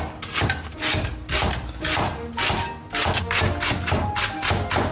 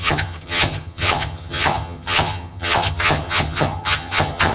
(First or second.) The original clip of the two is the first